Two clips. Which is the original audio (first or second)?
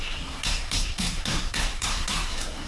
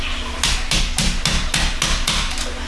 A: second